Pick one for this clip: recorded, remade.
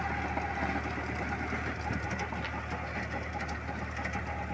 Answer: recorded